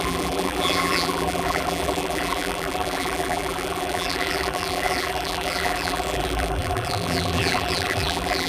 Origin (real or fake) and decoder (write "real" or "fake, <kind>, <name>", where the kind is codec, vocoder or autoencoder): fake, vocoder, BigVGAN v2